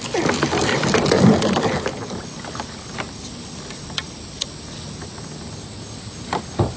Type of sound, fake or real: real